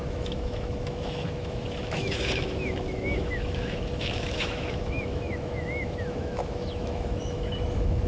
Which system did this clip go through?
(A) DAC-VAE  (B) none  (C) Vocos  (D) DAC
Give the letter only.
A